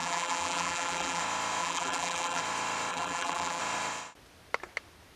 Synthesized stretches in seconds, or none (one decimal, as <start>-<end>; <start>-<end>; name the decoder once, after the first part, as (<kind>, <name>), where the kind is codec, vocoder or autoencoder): 0.0-1.2 (vocoder, BigVGAN v2); 1.6-2.4; 2.9-3.6